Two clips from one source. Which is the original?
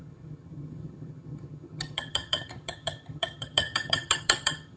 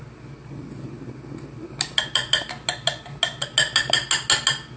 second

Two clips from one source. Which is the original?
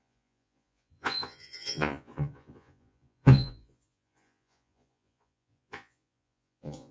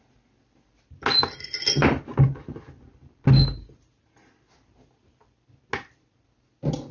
second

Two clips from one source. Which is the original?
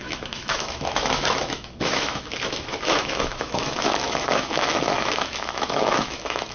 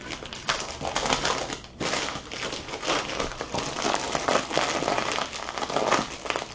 second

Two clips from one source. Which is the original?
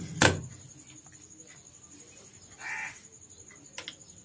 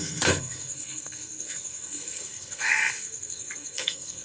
first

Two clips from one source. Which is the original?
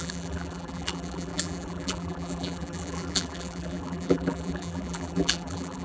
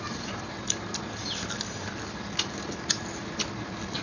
second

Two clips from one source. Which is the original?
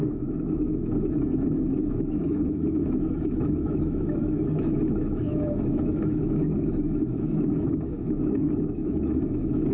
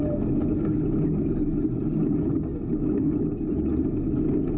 second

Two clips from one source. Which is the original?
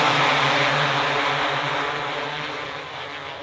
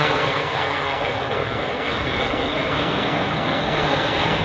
first